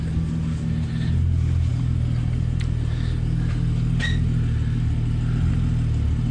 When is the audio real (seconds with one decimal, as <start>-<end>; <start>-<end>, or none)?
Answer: 0.0-6.3